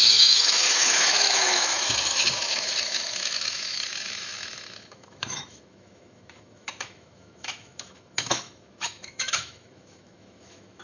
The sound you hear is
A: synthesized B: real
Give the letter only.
A